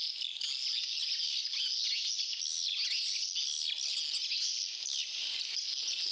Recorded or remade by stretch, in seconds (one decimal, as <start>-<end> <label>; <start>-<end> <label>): 0.0-6.1 recorded